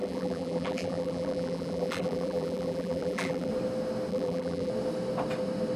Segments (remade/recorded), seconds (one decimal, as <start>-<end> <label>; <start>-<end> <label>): 0.0-3.5 remade; 3.5-4.1 recorded; 4.1-4.7 remade; 4.7-5.8 recorded